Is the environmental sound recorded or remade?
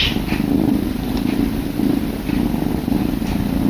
recorded